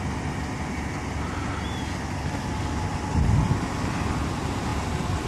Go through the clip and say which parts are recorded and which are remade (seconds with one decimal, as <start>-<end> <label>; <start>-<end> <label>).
0.0-5.3 remade